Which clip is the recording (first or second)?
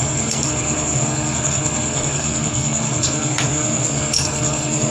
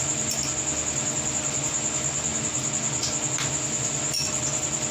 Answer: second